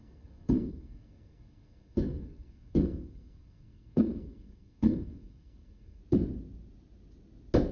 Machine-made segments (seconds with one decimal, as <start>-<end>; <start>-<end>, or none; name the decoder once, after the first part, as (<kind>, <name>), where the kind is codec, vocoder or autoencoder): 0.0-6.0 (codec, SNAC)